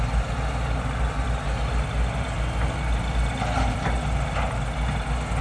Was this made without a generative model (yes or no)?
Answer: yes